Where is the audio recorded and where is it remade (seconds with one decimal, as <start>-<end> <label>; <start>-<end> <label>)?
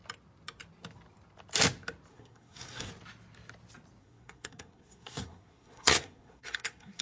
0.0-2.1 recorded; 2.1-2.9 remade; 2.9-4.0 recorded; 4.0-7.0 remade